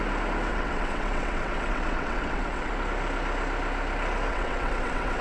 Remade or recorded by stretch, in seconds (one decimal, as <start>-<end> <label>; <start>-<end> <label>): 0.0-0.5 recorded; 0.5-2.7 remade; 2.7-4.3 recorded; 4.3-5.2 remade